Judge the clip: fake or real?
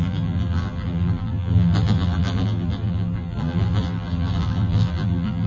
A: fake